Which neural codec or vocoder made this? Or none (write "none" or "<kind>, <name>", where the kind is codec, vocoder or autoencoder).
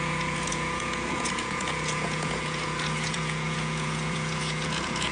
vocoder, Vocos